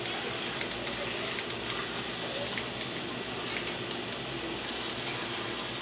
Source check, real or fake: real